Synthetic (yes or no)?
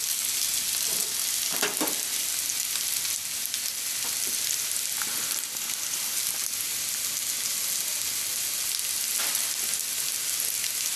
no